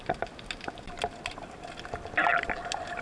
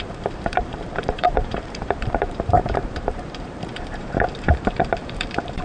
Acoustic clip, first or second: first